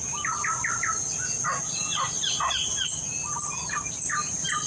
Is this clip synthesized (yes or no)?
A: no